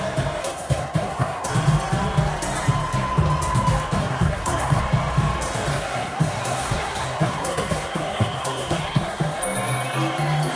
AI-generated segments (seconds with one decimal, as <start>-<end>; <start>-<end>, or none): 0.4-1.5; 4.0-4.8; 5.7-9.4